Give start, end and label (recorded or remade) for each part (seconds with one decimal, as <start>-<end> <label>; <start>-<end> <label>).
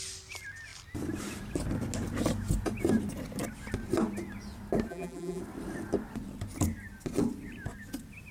0.0-4.9 recorded; 4.9-5.4 remade; 5.4-8.3 recorded